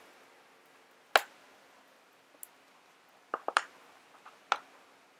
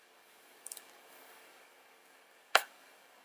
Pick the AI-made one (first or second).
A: second